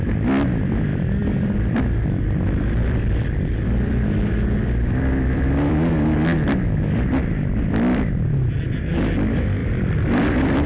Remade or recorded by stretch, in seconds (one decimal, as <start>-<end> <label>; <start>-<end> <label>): 0.0-0.9 recorded; 0.9-5.7 remade; 5.7-7.2 recorded; 7.2-8.0 remade; 8.0-9.6 recorded; 9.6-10.7 remade